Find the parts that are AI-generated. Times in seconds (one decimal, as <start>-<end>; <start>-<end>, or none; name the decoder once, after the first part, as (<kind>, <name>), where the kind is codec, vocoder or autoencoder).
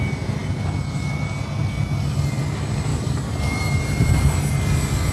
2.9-4.5 (vocoder, BigVGAN v2)